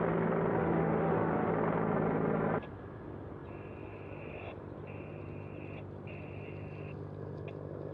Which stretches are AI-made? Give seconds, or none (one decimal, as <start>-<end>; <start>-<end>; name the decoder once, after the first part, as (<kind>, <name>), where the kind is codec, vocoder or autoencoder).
0.6-1.5 (autoencoder, DAC-VAE)